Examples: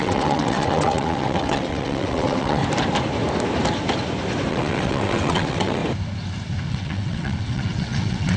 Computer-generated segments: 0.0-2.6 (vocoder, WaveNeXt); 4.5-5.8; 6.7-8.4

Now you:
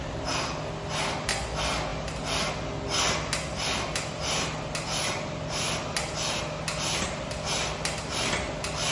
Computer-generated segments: none